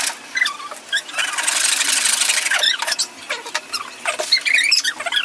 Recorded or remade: recorded